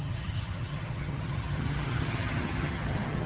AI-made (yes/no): yes